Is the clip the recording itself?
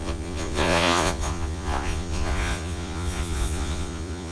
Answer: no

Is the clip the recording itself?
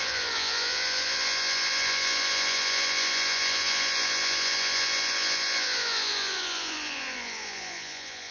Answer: no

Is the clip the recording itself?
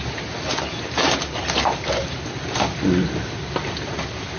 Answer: yes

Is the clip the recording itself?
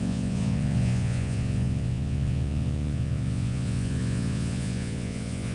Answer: no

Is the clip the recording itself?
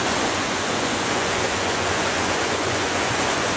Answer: no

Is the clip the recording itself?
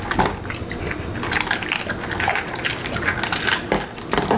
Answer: yes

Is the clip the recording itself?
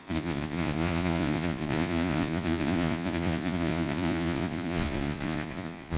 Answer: no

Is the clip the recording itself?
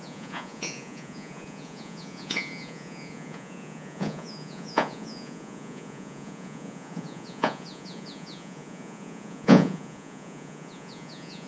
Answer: no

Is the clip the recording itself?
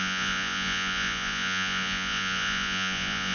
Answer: no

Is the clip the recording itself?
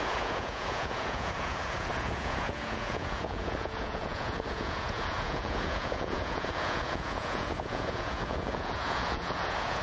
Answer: no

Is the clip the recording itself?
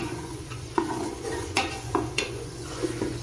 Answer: no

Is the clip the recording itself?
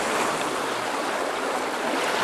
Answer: yes